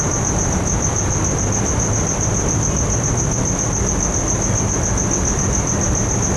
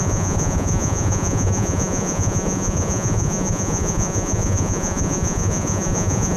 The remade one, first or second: second